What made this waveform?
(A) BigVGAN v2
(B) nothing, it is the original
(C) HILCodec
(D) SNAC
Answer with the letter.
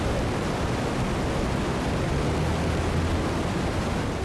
B